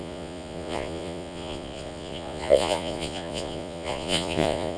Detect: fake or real fake